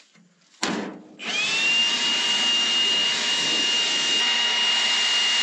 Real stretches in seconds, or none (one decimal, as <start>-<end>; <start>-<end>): 0.0-1.8; 2.3-3.0